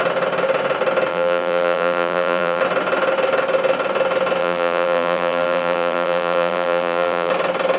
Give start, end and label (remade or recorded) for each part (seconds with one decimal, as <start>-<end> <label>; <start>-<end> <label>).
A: 0.0-1.1 recorded; 1.1-2.6 remade; 2.6-4.4 recorded; 4.4-7.3 remade; 7.3-7.8 recorded